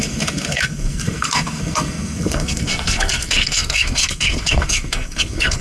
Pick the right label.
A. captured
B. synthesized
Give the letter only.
B